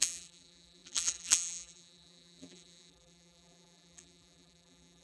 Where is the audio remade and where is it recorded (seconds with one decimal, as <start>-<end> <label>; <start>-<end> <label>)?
0.0-5.0 remade